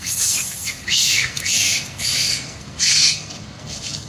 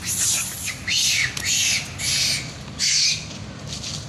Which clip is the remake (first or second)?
first